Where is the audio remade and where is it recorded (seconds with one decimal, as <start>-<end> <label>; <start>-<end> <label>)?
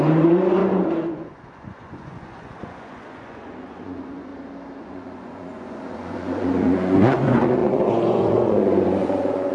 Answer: 0.0-4.3 remade; 4.3-4.8 recorded; 4.8-9.5 remade